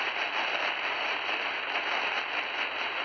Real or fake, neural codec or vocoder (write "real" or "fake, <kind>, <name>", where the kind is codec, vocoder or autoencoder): real